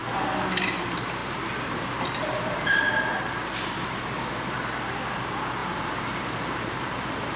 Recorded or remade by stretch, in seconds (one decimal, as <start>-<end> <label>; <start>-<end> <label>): 0.0-5.6 recorded; 5.6-7.4 remade